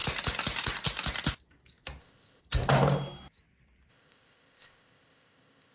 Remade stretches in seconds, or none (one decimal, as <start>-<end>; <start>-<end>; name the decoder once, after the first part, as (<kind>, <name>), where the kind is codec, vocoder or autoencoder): 2.0-2.4 (codec, ZipCodec); 3.9-5.7